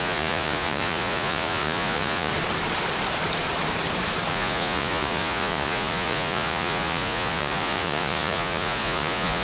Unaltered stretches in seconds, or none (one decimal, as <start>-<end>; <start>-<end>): 2.3-4.3